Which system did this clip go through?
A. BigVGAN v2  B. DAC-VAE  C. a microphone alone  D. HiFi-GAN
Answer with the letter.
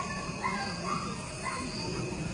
C